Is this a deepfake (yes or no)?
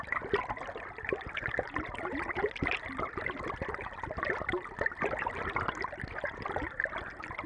no